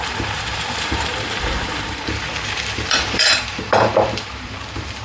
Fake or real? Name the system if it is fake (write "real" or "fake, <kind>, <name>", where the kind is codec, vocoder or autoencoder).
fake, vocoder, BigVGAN v2